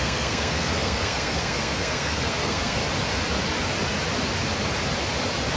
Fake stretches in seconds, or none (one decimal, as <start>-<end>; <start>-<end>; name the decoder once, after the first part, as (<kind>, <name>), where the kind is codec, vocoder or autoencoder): 0.0-2.8 (codec, SNAC)

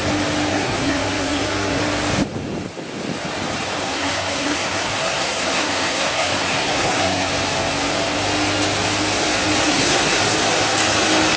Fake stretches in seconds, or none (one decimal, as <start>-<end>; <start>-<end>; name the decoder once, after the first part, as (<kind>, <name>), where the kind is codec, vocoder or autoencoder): 0.5-1.8 (codec, SNAC); 3.8-7.3; 9.6-10.2

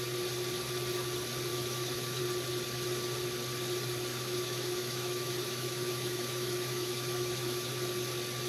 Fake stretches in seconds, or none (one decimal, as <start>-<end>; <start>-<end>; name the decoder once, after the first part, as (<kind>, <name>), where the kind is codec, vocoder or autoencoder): 1.5-2.2 (autoencoder, DAC-VAE); 4.1-7.7

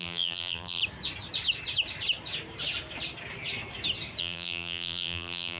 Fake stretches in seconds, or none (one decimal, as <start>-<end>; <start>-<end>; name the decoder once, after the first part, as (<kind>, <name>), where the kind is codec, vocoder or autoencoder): 0.0-0.8 (vocoder, BigVGAN v2); 4.2-5.6

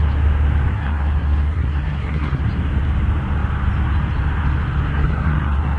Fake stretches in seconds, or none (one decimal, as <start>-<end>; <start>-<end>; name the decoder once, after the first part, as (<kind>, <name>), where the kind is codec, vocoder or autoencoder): 0.7-2.4 (codec, SNAC); 4.9-5.8

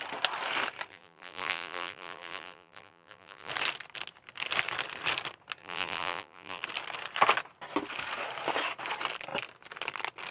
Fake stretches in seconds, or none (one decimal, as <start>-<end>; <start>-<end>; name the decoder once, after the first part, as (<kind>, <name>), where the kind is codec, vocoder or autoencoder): 0.9-3.5 (vocoder, BigVGAN v2); 5.6-6.6